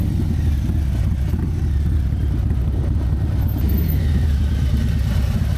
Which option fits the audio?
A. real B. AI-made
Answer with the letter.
B